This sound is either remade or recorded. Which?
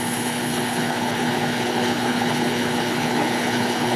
remade